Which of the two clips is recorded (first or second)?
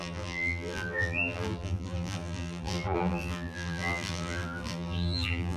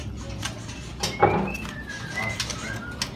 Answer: second